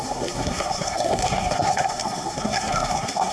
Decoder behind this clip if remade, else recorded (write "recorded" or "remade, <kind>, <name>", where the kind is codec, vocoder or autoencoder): remade, codec, SNAC